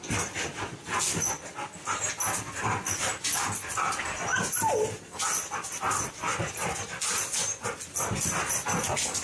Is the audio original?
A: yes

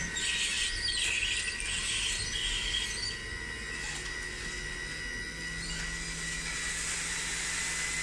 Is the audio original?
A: yes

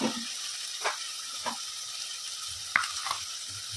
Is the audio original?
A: yes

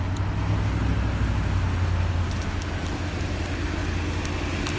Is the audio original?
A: yes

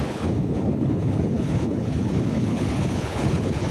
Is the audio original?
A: no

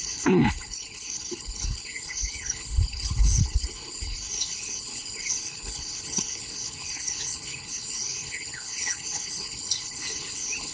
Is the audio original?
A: no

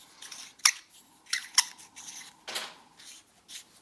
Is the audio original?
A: yes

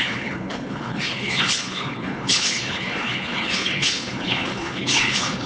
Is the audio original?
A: no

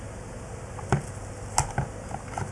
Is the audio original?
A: yes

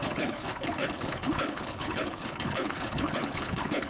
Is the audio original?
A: no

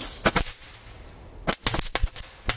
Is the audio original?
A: yes